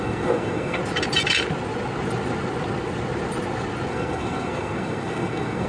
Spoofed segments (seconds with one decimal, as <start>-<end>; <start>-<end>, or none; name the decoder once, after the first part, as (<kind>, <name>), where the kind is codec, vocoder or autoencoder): 0.0-0.8 (codec, SNAC); 3.9-5.7